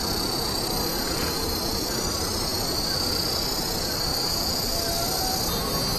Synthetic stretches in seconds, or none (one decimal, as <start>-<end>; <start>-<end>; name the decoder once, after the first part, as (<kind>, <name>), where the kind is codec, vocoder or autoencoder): 0.9-1.9 (vocoder, Vocos); 2.5-3.1; 4.1-4.8